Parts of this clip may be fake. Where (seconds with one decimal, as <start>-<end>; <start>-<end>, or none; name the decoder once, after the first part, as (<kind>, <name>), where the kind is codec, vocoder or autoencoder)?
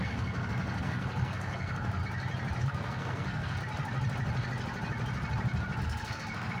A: 0.0-2.0 (codec, SNAC); 2.6-3.6; 5.8-6.6